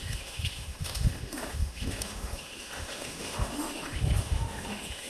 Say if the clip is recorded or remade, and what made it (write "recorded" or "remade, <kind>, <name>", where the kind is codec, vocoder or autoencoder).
remade, autoencoder, DAC-VAE